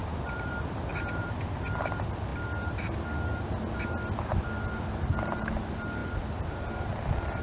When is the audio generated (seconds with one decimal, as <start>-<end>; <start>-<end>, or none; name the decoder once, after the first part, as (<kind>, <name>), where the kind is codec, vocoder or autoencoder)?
0.0-0.5 (vocoder, BigVGAN v2); 0.9-1.6